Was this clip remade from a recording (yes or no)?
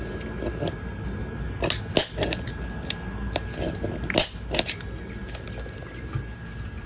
no